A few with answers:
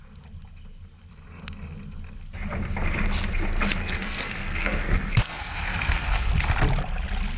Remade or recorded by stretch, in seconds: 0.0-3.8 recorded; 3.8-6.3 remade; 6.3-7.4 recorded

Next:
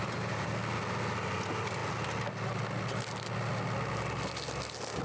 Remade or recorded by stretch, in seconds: 0.0-0.5 remade; 0.5-5.0 recorded